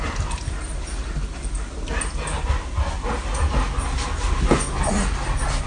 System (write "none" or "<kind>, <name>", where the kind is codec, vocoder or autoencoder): none